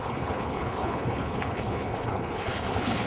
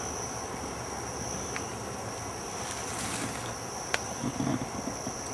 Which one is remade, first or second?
first